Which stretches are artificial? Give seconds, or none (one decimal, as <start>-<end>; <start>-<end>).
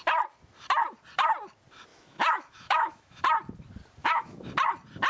1.9-3.2; 4.0-4.5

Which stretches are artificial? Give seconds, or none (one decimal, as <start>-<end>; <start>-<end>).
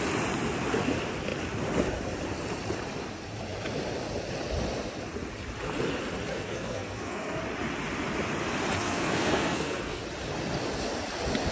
6.3-7.4; 8.8-10.0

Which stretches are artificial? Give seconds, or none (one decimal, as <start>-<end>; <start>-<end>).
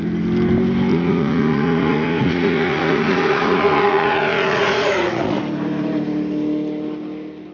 0.9-5.4